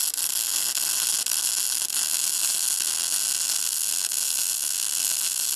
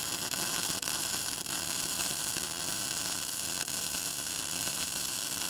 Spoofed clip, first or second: second